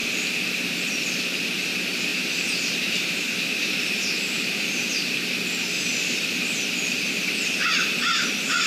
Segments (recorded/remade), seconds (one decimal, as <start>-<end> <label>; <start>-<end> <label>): 0.0-2.1 recorded; 2.1-4.6 remade; 4.6-8.7 recorded